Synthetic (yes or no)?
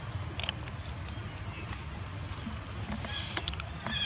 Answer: no